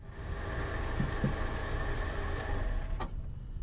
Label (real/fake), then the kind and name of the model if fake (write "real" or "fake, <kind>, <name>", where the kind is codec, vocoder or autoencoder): real